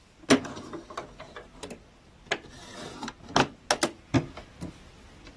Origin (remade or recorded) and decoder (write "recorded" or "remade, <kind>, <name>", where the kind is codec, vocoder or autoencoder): recorded